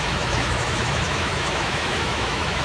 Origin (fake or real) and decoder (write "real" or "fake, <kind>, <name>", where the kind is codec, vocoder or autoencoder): fake, autoencoder, DAC-VAE